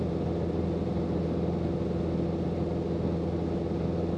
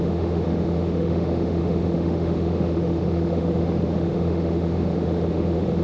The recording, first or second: first